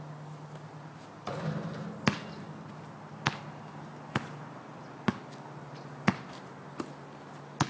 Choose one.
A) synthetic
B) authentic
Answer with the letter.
B